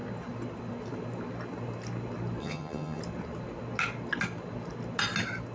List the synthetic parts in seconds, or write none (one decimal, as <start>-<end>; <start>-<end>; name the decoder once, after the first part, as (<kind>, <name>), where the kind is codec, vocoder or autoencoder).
2.4-3.0 (vocoder, HiFi-GAN)